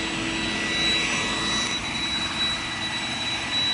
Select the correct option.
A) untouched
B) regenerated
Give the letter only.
A